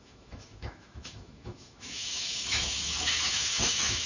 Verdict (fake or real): fake